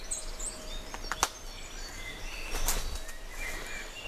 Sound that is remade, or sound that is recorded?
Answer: recorded